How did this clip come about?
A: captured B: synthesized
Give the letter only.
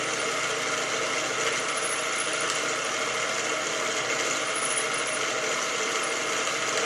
A